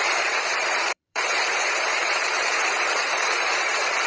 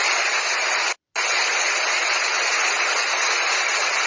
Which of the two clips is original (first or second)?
second